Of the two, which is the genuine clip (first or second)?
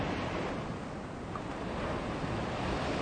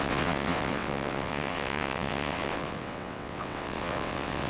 first